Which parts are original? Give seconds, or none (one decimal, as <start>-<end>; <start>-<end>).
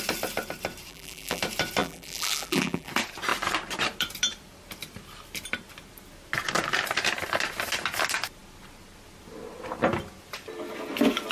0.0-0.9; 1.4-1.8; 2.9-11.3